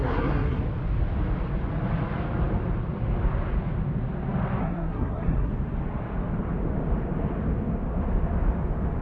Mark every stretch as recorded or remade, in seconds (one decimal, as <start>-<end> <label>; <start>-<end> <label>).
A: 0.0-0.6 remade; 0.6-4.6 recorded; 4.6-5.5 remade; 5.5-9.0 recorded